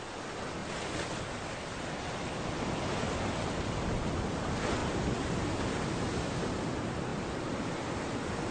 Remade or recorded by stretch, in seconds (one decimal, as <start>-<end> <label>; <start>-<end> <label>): 0.0-4.8 recorded; 4.8-5.6 remade; 5.6-8.5 recorded